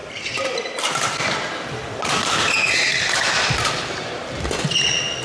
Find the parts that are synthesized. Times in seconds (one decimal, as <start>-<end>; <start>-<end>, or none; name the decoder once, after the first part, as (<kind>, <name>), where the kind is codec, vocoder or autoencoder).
2.9-4.3 (vocoder, BigVGAN v2)